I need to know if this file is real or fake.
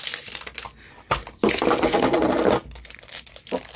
real